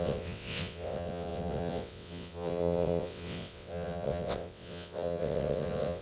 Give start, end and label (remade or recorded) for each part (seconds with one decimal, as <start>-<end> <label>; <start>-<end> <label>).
0.0-6.0 remade